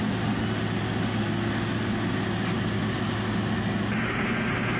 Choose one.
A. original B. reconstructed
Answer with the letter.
A